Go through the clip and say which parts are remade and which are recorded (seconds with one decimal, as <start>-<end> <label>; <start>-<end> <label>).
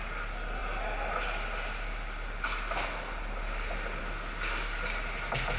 0.0-5.6 recorded